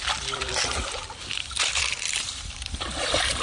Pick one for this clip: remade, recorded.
remade